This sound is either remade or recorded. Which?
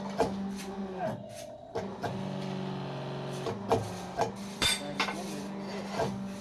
recorded